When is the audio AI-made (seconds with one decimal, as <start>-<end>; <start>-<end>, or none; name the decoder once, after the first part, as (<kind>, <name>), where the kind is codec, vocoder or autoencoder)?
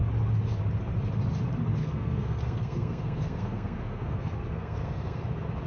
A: 1.8-5.2 (codec, SNAC)